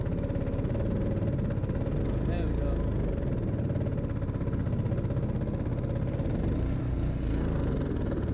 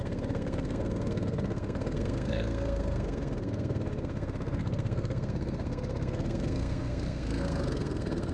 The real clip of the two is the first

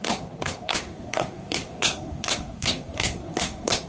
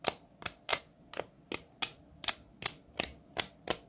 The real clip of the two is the second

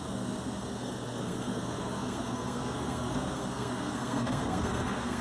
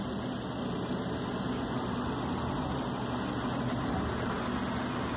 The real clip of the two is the second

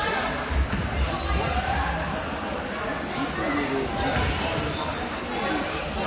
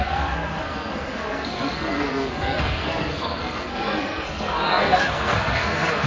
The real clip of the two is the first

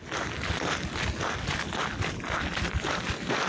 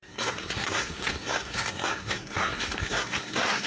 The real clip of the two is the first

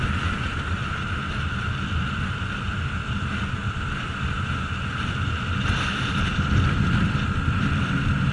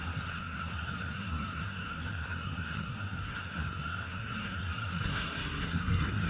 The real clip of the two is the first